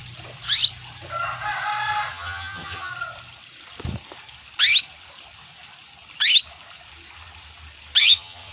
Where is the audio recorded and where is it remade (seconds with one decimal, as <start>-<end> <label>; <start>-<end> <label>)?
0.0-2.1 recorded; 2.1-2.9 remade; 2.9-8.0 recorded; 8.0-8.5 remade